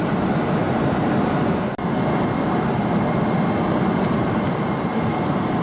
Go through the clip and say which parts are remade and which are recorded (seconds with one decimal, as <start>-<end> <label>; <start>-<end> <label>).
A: 0.0-0.6 remade; 0.6-4.0 recorded; 4.0-5.6 remade